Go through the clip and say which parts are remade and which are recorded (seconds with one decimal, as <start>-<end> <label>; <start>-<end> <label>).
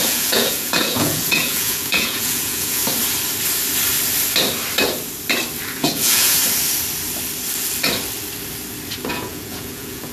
0.0-2.8 remade; 2.8-5.7 recorded; 5.7-6.4 remade; 6.4-9.1 recorded; 9.1-10.1 remade